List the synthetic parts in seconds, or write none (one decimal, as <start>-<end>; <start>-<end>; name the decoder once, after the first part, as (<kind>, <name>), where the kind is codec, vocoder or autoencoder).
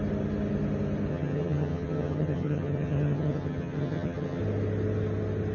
1.1-4.4 (vocoder, HiFi-GAN)